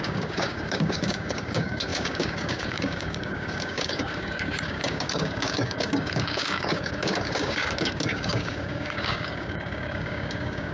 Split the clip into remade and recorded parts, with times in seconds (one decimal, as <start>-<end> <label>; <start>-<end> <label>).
0.0-10.7 remade